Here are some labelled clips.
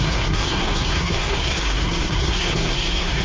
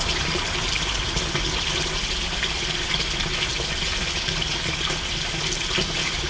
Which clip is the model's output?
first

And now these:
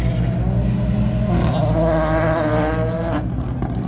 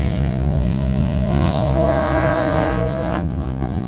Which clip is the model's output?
second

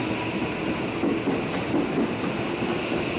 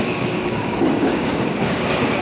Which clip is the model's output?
second